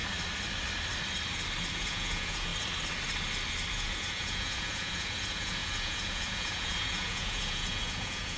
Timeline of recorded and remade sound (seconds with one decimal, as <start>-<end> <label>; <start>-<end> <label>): 0.0-1.7 recorded; 1.7-2.5 remade; 2.5-3.7 recorded; 3.7-8.4 remade